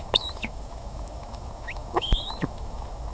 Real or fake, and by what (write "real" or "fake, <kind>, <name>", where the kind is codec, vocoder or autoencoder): fake, autoencoder, DAC-VAE